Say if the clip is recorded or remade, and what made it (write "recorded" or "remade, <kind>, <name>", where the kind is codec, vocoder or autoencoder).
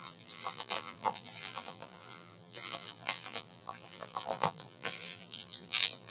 remade, vocoder, BigVGAN v2